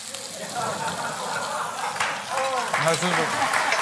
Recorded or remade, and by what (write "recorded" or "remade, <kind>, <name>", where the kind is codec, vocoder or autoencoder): recorded